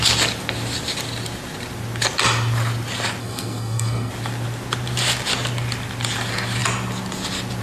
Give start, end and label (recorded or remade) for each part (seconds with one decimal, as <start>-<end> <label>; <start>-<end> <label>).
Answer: 0.0-3.2 recorded; 3.2-4.1 remade; 4.1-7.6 recorded